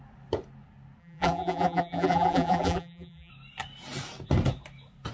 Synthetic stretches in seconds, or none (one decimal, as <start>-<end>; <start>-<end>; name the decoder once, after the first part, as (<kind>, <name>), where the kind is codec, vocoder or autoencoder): 1.0-3.3 (vocoder, BigVGAN v2)